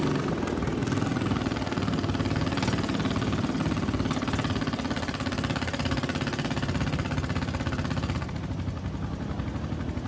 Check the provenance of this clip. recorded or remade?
recorded